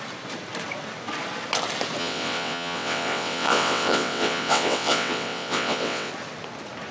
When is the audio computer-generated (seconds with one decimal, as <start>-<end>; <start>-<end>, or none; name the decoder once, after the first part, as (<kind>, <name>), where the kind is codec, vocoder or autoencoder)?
2.0-6.1 (vocoder, WaveNeXt)